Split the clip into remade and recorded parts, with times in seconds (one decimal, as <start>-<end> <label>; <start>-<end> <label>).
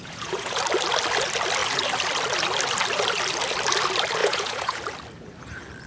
0.0-0.6 remade; 0.6-4.2 recorded; 4.2-4.8 remade; 4.8-5.9 recorded